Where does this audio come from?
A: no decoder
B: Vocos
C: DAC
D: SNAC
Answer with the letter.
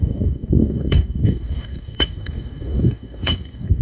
C